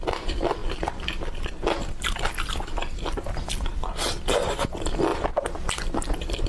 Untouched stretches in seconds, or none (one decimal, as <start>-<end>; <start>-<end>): 0.0-6.5